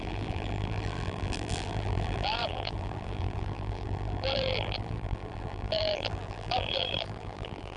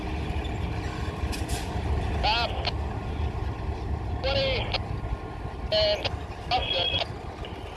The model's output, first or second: first